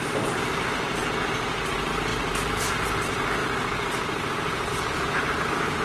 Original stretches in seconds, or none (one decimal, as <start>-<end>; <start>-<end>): 1.0-1.7